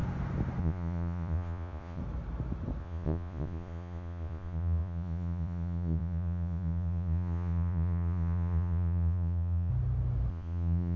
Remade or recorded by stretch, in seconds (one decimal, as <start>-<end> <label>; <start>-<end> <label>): 0.0-0.6 recorded; 0.6-2.0 remade; 2.0-2.8 recorded; 2.8-9.7 remade; 9.7-10.3 recorded; 10.3-11.0 remade